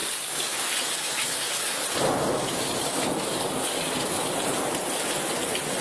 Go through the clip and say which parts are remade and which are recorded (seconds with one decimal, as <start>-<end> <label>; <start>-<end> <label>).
0.0-1.8 remade; 1.8-2.3 recorded; 2.3-4.3 remade; 4.3-5.8 recorded